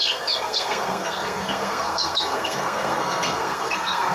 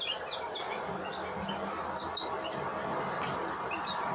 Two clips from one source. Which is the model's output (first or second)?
first